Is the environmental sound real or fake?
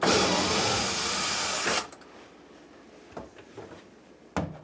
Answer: real